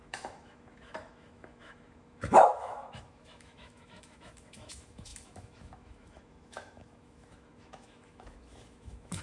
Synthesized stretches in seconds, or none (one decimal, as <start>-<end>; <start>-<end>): 0.0-9.2